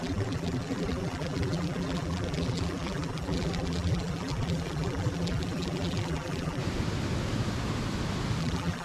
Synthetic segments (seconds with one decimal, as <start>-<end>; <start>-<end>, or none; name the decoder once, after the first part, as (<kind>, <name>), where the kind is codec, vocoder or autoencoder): 0.0-6.6 (vocoder, BigVGAN v2); 8.4-8.8